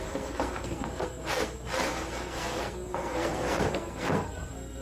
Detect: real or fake fake